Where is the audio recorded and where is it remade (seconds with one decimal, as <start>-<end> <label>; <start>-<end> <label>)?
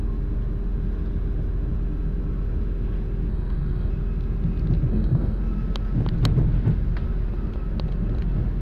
0.0-3.3 recorded; 3.3-3.9 remade; 3.9-4.9 recorded; 4.9-5.4 remade; 5.4-8.6 recorded